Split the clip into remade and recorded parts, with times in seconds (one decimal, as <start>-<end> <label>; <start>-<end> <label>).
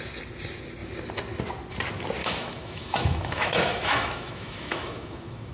0.0-2.2 recorded; 2.2-5.5 remade